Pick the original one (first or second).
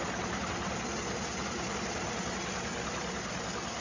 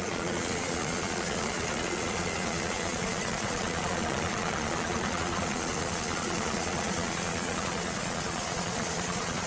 first